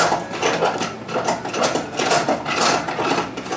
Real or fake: real